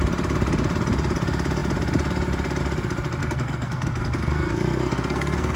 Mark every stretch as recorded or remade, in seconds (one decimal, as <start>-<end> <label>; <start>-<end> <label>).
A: 0.0-3.2 recorded; 3.2-5.6 remade